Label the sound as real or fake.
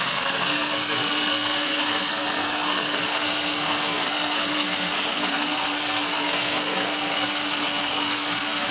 fake